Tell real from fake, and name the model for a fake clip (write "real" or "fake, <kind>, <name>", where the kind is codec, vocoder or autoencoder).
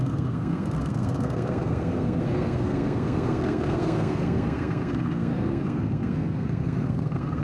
fake, codec, SNAC